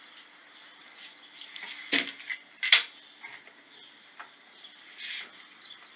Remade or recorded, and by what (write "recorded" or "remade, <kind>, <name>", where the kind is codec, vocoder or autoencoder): recorded